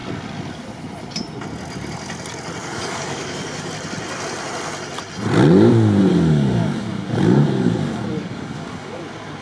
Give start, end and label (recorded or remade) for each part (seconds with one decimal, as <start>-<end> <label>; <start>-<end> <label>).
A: 0.0-2.6 recorded; 2.6-3.7 remade; 3.7-6.1 recorded; 6.1-9.0 remade; 9.0-9.4 recorded

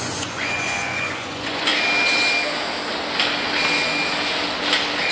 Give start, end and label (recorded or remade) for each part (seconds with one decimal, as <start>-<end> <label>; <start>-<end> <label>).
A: 0.0-1.7 remade; 1.7-5.1 recorded

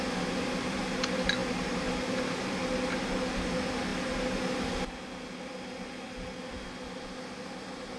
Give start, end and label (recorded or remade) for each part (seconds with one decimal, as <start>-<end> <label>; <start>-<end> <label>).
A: 0.0-8.0 recorded

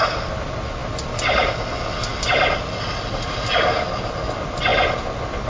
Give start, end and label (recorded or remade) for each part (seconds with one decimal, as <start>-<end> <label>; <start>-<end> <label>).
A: 0.0-5.5 recorded

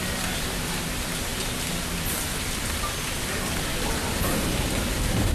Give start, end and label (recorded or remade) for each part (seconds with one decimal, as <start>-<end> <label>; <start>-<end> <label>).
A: 0.0-5.3 recorded

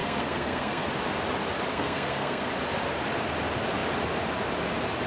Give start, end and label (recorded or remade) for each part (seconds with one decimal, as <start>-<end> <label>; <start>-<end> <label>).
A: 0.0-0.9 remade; 0.9-1.7 recorded; 1.7-2.5 remade; 2.5-5.1 recorded

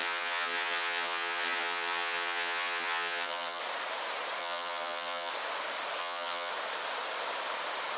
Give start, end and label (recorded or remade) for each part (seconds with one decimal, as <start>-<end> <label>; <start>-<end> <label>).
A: 0.0-3.6 remade; 3.6-4.4 recorded; 4.4-5.3 remade; 5.3-6.0 recorded; 6.0-6.5 remade; 6.5-8.0 recorded

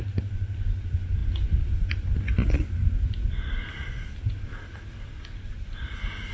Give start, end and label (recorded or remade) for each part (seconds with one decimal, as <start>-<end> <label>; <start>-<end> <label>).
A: 0.0-6.3 recorded